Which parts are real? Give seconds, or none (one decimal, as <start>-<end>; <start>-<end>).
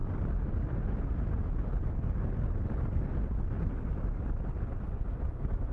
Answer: 0.0-5.7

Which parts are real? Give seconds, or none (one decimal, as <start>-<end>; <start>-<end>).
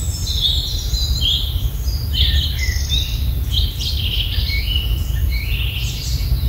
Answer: 0.0-6.5